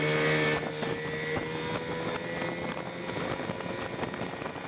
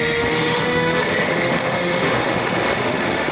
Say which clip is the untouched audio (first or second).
first